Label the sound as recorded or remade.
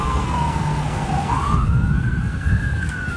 remade